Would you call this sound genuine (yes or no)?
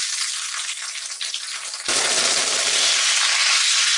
yes